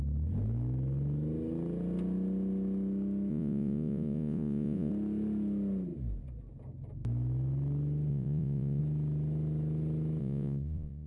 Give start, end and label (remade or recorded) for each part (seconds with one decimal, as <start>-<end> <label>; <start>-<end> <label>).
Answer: 0.0-3.3 recorded; 3.3-4.9 remade; 4.9-8.1 recorded; 8.1-8.8 remade; 8.8-10.2 recorded; 10.2-11.1 remade

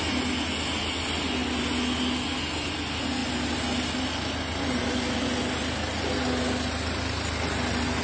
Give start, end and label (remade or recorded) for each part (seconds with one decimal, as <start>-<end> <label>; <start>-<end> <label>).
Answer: 0.0-8.0 recorded